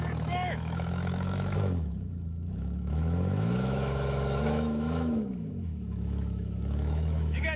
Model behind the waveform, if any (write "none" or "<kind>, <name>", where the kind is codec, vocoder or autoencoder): autoencoder, DAC-VAE